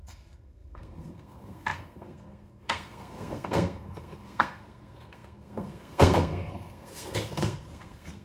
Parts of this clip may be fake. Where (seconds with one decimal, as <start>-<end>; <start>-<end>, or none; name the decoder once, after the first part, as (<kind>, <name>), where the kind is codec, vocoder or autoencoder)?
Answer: 0.0-8.2 (codec, SNAC)